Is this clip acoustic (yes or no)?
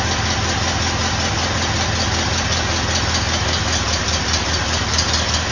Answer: yes